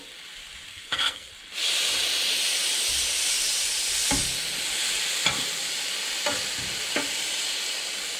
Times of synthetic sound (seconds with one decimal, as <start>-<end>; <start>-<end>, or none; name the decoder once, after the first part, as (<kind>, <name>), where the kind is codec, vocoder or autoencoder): 0.7-1.3 (codec, SNAC)